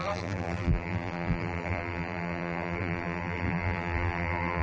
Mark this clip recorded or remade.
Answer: remade